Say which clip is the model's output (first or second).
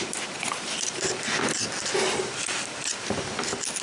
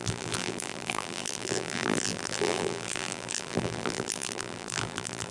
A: second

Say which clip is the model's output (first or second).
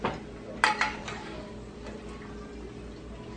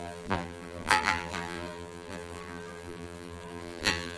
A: second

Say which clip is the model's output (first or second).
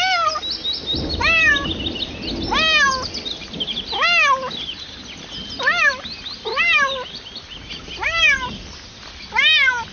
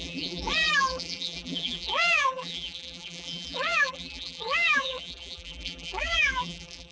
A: second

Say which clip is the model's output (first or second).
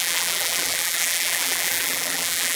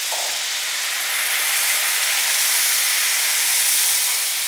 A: first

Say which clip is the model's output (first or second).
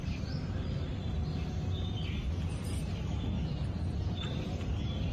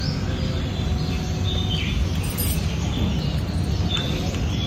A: first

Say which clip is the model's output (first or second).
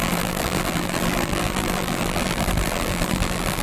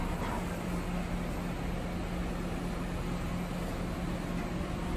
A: first